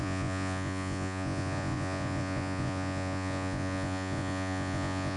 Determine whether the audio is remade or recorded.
remade